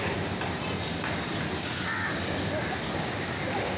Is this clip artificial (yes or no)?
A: no